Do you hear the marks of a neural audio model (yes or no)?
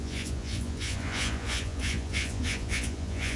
yes